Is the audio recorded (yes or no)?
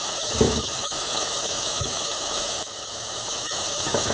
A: no